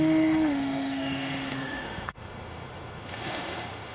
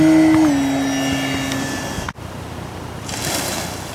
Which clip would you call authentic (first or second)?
second